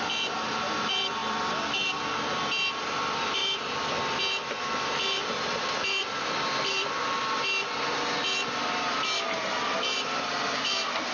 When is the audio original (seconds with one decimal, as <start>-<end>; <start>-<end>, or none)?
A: 0.0-1.2; 2.0-5.2; 7.0-11.1